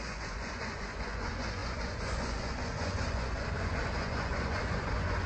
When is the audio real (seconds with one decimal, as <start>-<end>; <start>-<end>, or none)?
none